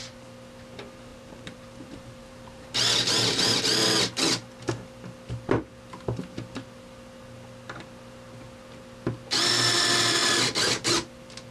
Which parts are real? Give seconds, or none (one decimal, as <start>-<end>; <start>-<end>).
0.0-1.1; 3.6-11.5